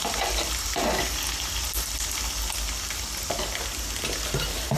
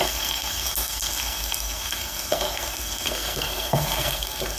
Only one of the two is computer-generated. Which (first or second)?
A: second